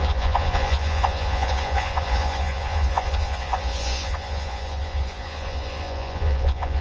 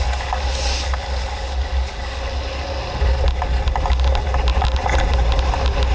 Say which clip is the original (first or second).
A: second